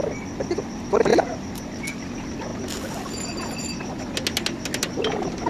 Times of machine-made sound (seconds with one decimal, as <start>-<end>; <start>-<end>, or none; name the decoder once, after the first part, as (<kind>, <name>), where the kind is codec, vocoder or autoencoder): 1.1-1.8 (vocoder, BigVGAN v2)